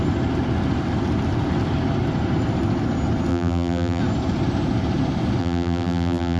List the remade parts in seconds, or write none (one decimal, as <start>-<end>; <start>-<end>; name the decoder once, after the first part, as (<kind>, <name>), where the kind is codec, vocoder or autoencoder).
3.3-4.0 (vocoder, BigVGAN v2); 5.4-6.4